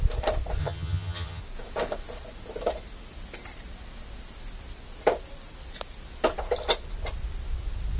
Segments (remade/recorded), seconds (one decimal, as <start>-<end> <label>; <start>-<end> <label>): 0.0-0.6 recorded; 0.6-1.4 remade; 1.4-8.0 recorded